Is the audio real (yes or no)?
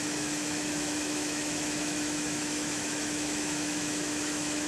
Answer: no